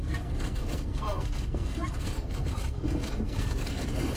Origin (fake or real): fake